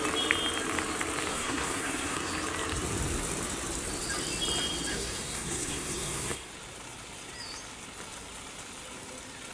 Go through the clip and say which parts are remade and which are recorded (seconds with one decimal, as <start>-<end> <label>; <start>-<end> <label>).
0.0-1.3 recorded; 1.3-2.3 remade; 2.3-4.9 recorded; 4.9-6.5 remade; 6.5-9.5 recorded